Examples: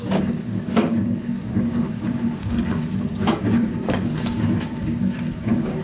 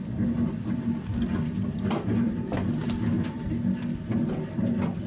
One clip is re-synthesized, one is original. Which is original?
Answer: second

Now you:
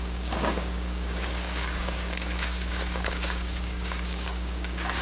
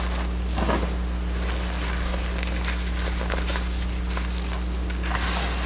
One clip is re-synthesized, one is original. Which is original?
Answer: second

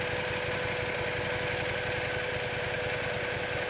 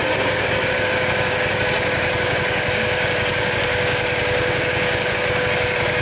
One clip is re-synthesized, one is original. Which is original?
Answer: first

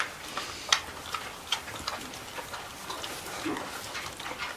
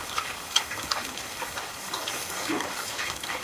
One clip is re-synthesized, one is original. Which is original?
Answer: first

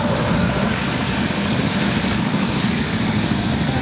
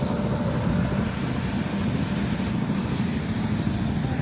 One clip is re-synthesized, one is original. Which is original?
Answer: second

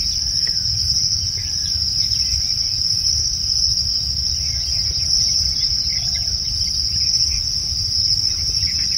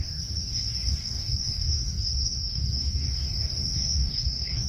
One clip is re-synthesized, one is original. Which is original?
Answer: first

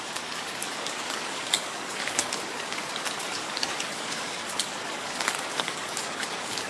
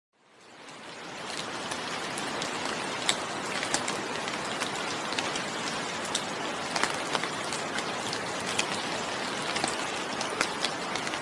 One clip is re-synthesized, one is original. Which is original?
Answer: second